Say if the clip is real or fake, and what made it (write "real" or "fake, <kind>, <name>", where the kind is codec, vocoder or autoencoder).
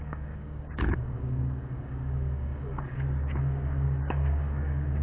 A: fake, codec, DAC